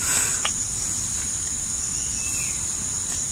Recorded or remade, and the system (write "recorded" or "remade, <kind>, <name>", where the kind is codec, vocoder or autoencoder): recorded